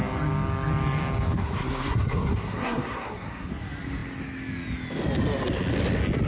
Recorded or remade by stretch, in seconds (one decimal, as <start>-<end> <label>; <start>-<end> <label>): 0.0-1.4 recorded; 1.4-3.5 remade; 3.5-6.3 recorded